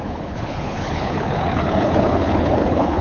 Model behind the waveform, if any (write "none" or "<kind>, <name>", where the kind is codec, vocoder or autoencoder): codec, HILCodec